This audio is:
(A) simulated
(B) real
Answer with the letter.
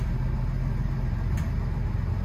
B